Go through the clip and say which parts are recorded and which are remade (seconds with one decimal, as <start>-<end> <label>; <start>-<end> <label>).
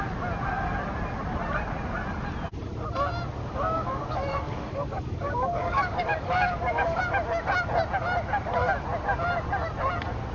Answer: 0.0-3.4 recorded; 3.4-7.0 remade; 7.0-10.3 recorded